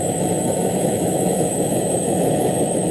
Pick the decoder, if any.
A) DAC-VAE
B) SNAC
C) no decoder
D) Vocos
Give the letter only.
A